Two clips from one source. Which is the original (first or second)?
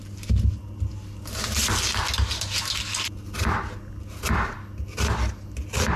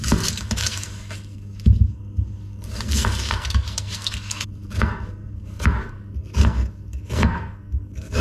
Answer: first